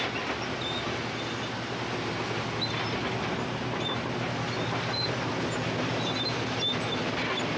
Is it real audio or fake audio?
real